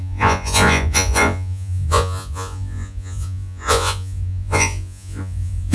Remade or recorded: remade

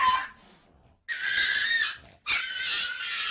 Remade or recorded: recorded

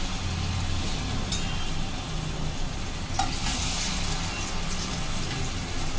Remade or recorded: recorded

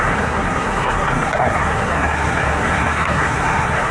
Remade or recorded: remade